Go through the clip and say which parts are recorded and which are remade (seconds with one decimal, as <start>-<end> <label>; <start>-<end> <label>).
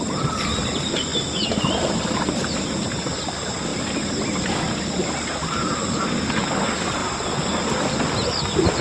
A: 0.0-1.1 recorded; 1.1-2.3 remade; 2.3-3.7 recorded; 3.7-5.4 remade; 5.4-7.0 recorded; 7.0-8.4 remade; 8.4-8.8 recorded